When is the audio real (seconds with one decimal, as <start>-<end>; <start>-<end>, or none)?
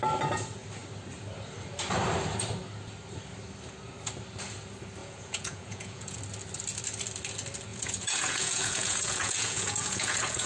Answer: 0.0-5.0; 6.2-7.7